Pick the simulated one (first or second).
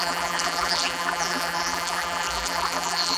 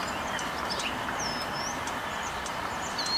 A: first